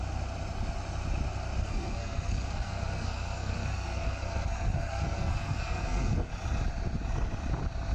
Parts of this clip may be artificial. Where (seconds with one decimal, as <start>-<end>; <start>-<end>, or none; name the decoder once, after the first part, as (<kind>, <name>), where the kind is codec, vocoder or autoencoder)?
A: 1.6-6.3 (codec, SNAC)

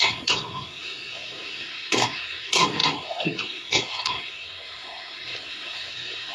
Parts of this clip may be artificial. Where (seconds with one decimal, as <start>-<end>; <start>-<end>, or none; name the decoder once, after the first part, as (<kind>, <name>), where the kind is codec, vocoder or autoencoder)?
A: 0.0-6.3 (codec, SNAC)

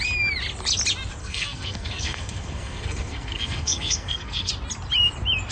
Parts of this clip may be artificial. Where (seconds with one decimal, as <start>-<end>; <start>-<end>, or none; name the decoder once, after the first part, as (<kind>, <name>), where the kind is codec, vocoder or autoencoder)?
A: 1.2-4.5 (codec, SNAC)

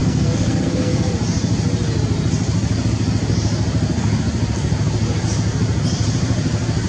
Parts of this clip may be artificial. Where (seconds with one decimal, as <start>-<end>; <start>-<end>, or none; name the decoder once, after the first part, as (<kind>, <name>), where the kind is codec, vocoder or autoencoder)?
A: 0.0-1.1 (codec, SNAC)

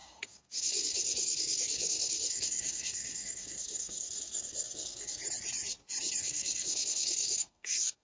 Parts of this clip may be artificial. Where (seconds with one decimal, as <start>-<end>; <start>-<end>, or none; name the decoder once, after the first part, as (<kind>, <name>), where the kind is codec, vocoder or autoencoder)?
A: 0.0-5.2 (codec, SNAC); 6.2-8.0

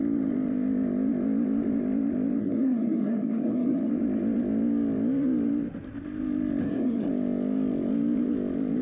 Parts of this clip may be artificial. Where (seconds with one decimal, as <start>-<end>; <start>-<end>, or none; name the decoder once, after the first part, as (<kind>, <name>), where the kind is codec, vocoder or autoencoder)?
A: 2.4-3.9 (codec, SNAC); 6.6-7.1